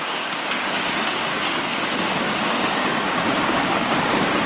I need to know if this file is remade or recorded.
remade